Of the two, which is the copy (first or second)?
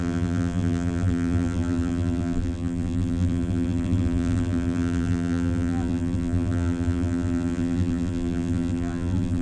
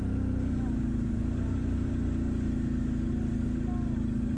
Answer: first